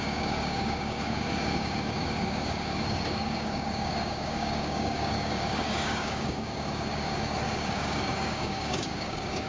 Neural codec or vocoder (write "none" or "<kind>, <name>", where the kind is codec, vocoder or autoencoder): codec, DAC